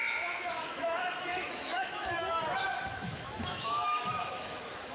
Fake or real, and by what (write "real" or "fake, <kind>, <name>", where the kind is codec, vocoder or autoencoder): fake, autoencoder, DAC-VAE